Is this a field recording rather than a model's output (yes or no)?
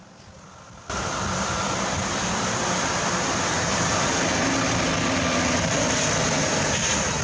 yes